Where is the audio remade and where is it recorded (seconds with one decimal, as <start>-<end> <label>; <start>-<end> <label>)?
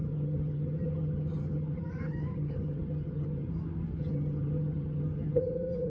0.0-3.5 remade; 3.5-4.0 recorded; 4.0-5.9 remade